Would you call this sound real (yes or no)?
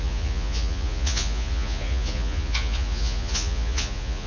no